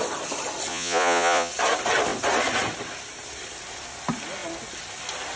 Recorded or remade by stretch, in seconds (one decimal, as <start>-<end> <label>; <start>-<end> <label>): 0.0-0.7 recorded; 0.7-1.5 remade; 1.5-5.4 recorded